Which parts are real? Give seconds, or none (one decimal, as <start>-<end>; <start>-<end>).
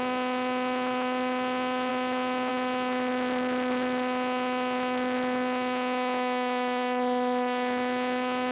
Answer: 0.0-8.5